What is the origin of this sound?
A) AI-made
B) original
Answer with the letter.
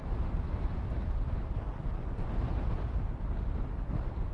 B